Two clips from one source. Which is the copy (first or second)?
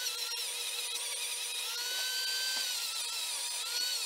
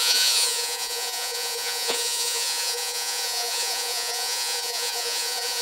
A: second